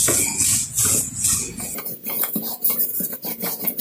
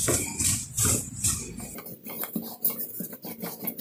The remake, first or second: first